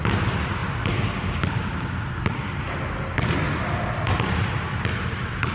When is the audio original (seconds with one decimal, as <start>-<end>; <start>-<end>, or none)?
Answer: 0.0-5.5